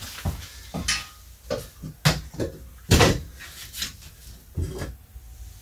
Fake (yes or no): no